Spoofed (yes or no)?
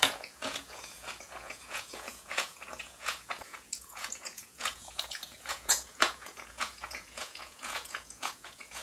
yes